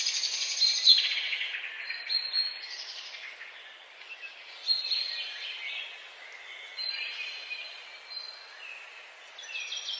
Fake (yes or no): no